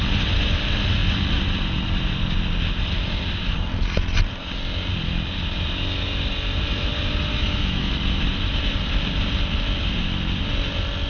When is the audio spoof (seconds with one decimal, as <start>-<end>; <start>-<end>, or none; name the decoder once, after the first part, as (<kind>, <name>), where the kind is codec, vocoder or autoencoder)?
7.3-7.9 (autoencoder, DAC-VAE)